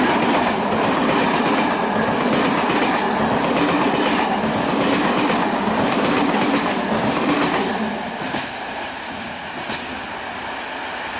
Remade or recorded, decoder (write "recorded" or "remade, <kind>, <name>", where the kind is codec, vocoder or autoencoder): recorded